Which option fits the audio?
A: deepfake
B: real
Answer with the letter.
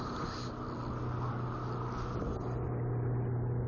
B